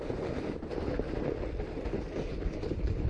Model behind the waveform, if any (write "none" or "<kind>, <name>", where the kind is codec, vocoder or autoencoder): vocoder, BigVGAN v2